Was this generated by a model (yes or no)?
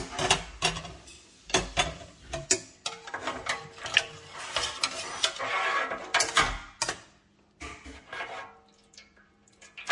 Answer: no